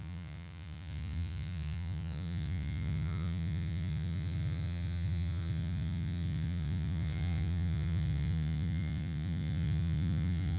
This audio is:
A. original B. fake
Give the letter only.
B